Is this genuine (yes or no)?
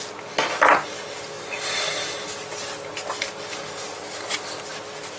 yes